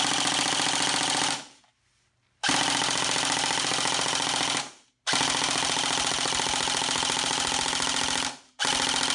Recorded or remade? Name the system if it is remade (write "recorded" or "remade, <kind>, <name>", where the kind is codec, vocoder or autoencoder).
recorded